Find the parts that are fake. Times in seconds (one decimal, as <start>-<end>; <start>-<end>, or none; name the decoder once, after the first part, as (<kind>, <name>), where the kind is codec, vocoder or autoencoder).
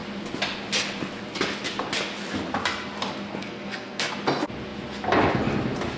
3.4-4.1 (codec, SNAC)